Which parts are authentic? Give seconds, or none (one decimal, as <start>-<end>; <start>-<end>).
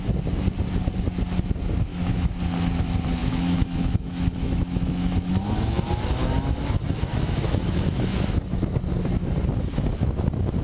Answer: 0.0-1.9; 2.4-3.2; 5.3-7.1; 8.8-10.6